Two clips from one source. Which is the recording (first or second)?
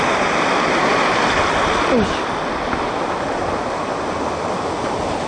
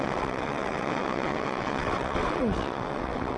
first